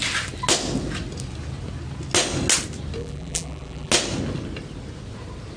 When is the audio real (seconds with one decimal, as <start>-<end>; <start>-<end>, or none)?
0.0-3.0; 3.9-5.6